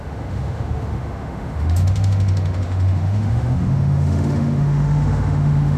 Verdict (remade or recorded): remade